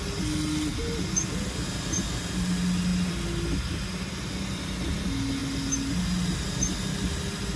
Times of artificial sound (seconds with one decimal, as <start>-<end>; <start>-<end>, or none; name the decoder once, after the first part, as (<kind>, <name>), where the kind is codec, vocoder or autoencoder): none